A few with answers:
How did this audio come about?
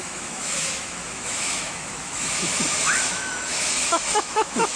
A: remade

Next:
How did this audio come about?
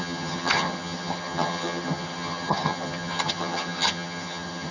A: remade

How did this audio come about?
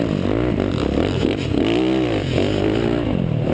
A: recorded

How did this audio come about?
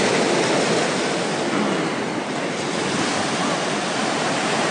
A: recorded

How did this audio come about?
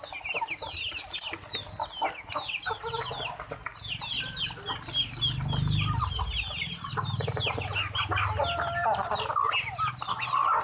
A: recorded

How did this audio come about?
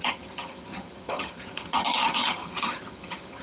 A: remade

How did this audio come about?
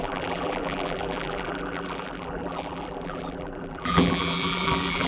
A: remade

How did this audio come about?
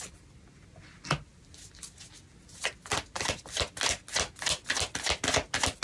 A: recorded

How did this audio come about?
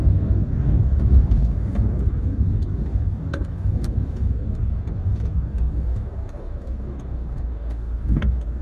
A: remade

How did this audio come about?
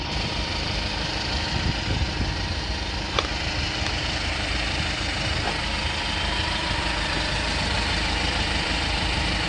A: remade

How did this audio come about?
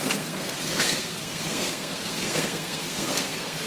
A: remade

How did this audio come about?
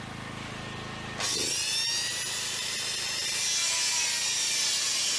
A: recorded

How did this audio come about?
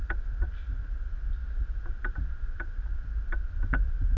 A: recorded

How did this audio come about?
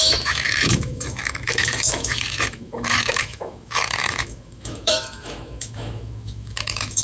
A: remade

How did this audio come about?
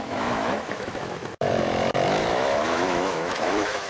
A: remade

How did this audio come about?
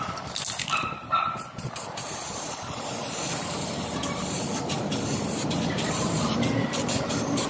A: remade